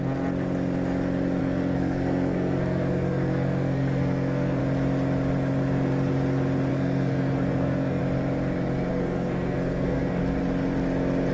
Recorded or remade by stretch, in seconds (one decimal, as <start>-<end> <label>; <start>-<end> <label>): 0.0-1.4 recorded; 1.4-4.6 remade; 4.6-6.7 recorded; 6.7-8.0 remade; 8.0-8.9 recorded; 8.9-10.2 remade; 10.2-11.3 recorded